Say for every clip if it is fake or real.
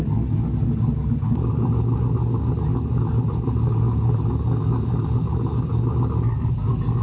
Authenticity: real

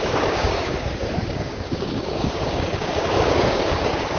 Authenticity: fake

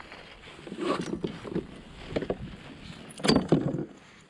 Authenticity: real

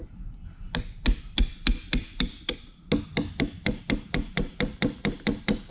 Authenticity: real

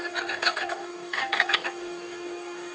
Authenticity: fake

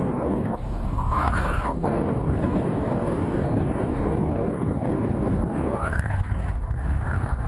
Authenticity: fake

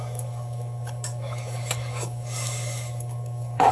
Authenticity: fake